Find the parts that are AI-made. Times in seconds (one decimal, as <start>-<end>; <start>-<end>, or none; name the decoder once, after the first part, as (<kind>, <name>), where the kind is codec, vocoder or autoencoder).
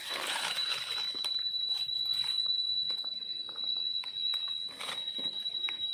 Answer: 0.0-0.6 (vocoder, BigVGAN v2); 1.5-1.9; 5.4-5.9